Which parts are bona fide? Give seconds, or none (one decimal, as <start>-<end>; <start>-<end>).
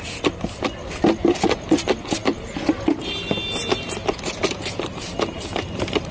0.0-4.4